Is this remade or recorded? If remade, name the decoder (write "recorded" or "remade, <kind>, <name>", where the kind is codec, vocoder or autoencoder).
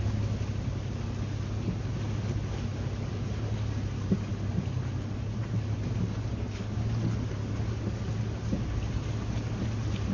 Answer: recorded